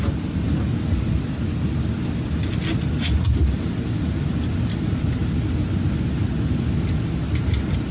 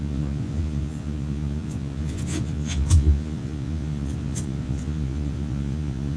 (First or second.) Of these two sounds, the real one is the first